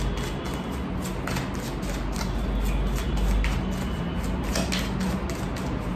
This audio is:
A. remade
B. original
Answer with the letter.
B